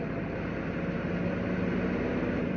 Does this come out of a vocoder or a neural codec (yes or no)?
no